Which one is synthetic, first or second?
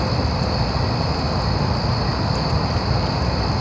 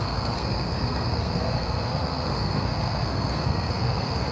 second